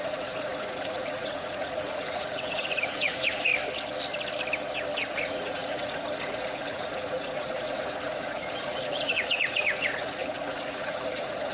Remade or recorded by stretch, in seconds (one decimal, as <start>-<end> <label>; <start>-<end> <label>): 0.0-3.5 remade; 3.5-5.1 recorded; 5.1-11.5 remade

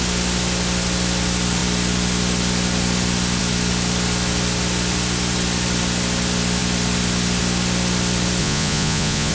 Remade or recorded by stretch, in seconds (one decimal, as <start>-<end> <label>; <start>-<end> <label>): 0.0-8.4 recorded; 8.4-9.3 remade

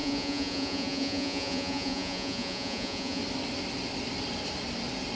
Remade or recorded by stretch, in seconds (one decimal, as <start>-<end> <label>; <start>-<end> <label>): 0.0-3.2 remade; 3.2-5.2 recorded

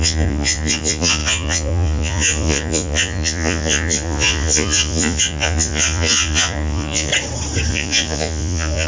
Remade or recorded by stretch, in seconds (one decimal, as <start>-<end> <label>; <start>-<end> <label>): 0.0-7.1 remade; 7.1-7.7 recorded; 7.7-8.9 remade